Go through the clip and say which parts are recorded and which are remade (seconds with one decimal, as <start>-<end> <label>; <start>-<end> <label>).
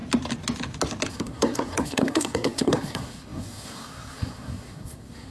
0.0-1.1 recorded; 1.1-5.3 remade